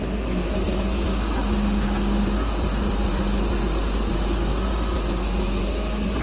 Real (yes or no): yes